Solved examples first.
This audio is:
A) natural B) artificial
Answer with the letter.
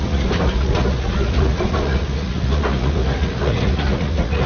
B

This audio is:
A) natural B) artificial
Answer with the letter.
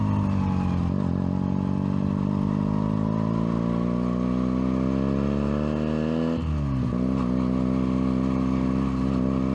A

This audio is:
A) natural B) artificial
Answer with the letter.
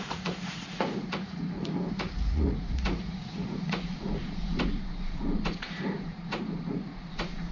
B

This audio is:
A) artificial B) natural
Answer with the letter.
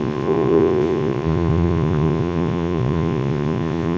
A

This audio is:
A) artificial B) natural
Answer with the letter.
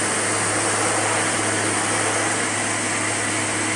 B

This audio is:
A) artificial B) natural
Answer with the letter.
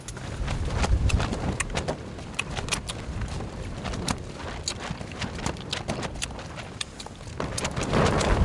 B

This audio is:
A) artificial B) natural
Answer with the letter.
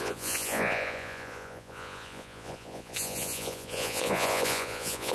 A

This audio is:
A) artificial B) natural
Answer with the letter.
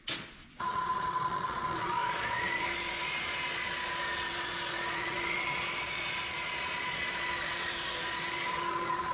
A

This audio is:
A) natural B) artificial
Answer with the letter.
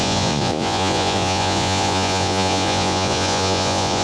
B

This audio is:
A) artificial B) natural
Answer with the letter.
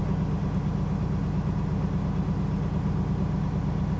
B